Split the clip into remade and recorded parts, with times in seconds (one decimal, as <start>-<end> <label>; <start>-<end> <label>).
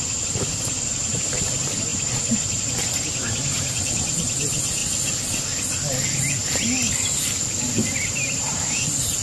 0.0-4.8 remade; 4.8-7.7 recorded; 7.7-9.2 remade